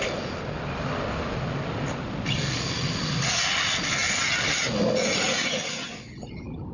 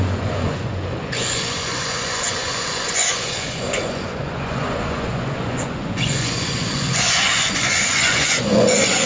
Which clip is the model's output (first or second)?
second